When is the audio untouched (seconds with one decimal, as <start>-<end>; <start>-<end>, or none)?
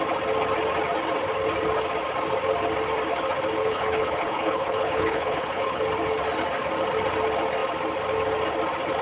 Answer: 0.0-3.6; 5.8-9.0